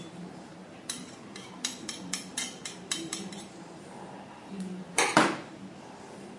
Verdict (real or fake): fake